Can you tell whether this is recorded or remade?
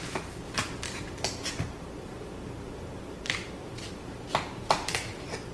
recorded